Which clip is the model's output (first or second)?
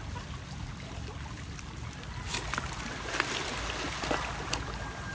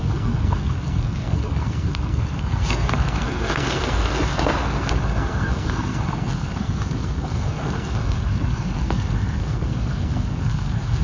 second